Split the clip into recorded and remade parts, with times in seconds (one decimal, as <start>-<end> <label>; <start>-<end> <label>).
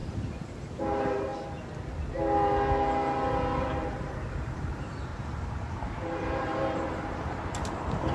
0.0-0.8 recorded; 0.8-1.3 remade; 1.3-3.6 recorded; 3.6-5.1 remade; 5.1-6.0 recorded; 6.0-8.1 remade